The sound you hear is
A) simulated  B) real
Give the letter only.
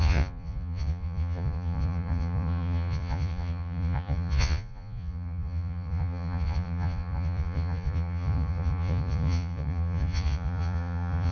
A